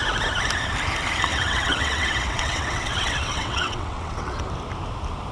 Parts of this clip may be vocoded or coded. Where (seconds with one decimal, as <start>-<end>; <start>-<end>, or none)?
1.3-4.4